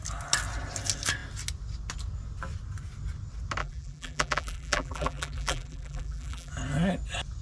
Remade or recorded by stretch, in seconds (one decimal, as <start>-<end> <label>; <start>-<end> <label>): 0.0-3.6 recorded; 3.6-6.5 remade; 6.5-7.4 recorded